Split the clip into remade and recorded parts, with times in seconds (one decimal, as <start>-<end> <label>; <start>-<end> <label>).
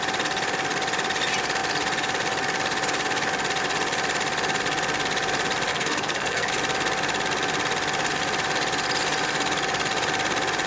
0.0-5.7 recorded; 5.7-6.5 remade; 6.5-10.7 recorded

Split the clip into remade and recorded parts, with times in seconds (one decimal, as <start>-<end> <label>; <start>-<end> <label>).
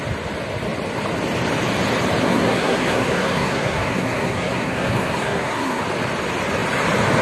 0.0-2.2 recorded; 2.2-5.8 remade; 5.8-7.2 recorded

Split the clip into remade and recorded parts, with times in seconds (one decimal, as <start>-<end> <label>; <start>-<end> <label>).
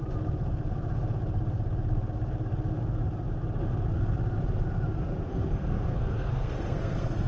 0.0-5.3 recorded; 5.3-7.3 remade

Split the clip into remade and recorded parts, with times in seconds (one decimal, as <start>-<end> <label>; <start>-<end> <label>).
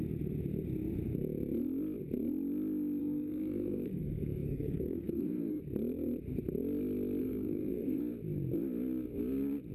0.0-3.0 recorded; 3.0-5.6 remade; 5.6-7.2 recorded; 7.2-8.0 remade; 8.0-9.7 recorded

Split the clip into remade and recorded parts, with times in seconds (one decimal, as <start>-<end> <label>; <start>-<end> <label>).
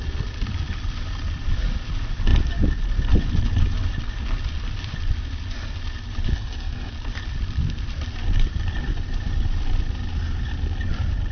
0.0-6.3 recorded; 6.3-6.9 remade; 6.9-11.3 recorded